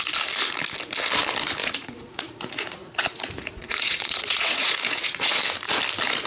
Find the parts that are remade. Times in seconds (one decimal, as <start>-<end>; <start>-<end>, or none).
1.6-5.4